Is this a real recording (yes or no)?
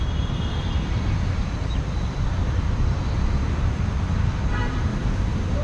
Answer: no